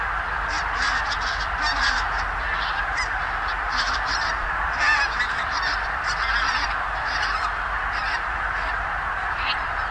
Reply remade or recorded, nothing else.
recorded